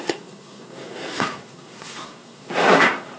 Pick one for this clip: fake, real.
fake